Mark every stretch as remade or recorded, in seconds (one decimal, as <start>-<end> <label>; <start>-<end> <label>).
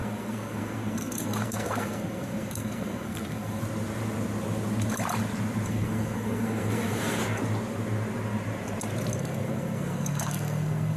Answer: 0.0-3.6 remade; 3.6-5.7 recorded; 5.7-7.2 remade; 7.2-9.2 recorded; 9.2-11.0 remade